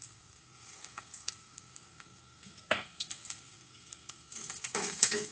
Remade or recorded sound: remade